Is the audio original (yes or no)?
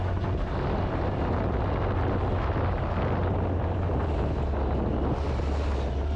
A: yes